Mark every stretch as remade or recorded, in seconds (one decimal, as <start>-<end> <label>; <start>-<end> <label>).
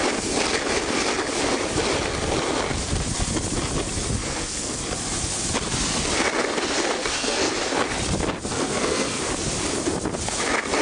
0.0-4.2 recorded; 4.2-4.8 remade; 4.8-7.0 recorded; 7.0-7.5 remade; 7.5-8.5 recorded; 8.5-9.2 remade; 9.2-10.8 recorded